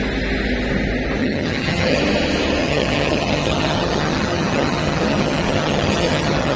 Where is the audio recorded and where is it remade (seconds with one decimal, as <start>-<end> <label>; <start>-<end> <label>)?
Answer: 0.0-1.2 recorded; 1.2-2.0 remade; 2.0-2.6 recorded; 2.6-6.6 remade